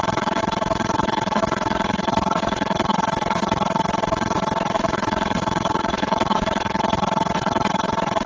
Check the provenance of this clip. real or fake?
fake